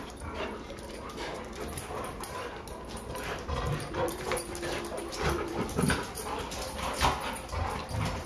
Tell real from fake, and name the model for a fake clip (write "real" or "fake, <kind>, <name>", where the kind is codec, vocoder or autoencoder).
real